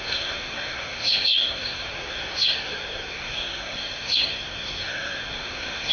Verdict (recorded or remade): remade